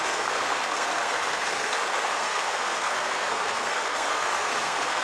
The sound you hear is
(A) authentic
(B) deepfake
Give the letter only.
B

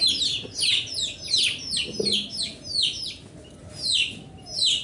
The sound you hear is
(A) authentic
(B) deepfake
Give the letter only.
A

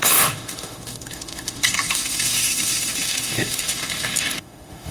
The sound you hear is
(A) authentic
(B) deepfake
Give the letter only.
B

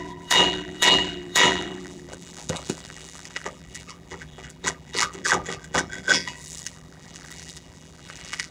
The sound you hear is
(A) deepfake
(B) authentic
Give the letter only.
A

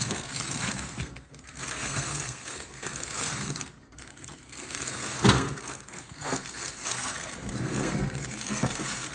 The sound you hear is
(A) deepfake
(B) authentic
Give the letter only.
A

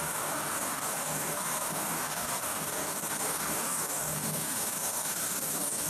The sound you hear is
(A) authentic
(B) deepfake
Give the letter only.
B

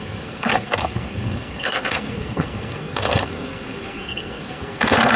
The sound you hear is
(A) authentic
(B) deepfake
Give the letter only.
B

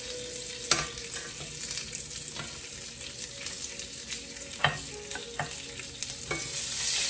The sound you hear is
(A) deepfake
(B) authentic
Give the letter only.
B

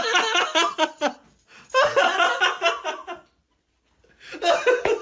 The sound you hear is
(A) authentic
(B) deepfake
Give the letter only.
A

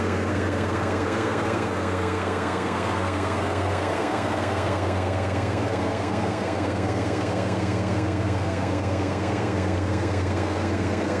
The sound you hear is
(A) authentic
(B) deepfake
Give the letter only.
B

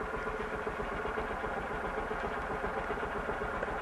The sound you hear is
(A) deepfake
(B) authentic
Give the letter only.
B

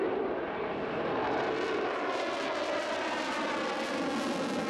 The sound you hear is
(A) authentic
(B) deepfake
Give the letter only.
A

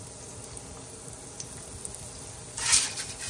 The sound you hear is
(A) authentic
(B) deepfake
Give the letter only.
A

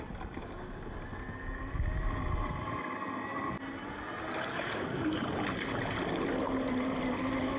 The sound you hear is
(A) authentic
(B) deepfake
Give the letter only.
A